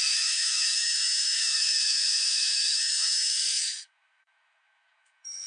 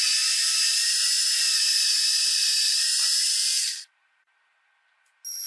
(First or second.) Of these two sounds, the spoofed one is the first